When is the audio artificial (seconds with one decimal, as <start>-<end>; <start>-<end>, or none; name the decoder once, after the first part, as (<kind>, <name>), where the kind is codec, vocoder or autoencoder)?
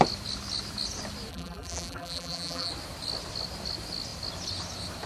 1.3-2.7 (vocoder, BigVGAN v2)